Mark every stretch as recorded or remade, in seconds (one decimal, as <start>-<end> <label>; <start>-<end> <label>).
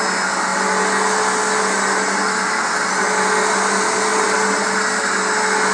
0.0-5.7 recorded